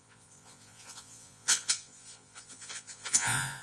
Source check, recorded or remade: remade